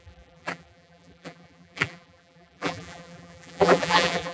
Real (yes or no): no